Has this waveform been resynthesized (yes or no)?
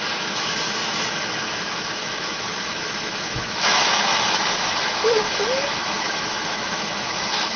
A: yes